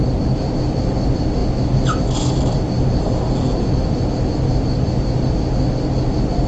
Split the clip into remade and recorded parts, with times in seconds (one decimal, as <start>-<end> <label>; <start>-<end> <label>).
0.0-6.5 recorded